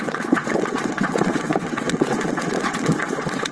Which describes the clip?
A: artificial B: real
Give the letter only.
A